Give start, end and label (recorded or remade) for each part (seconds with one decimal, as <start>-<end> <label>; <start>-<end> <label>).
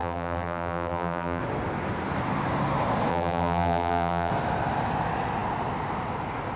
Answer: 0.0-1.4 remade; 1.4-3.1 recorded; 3.1-4.3 remade; 4.3-6.6 recorded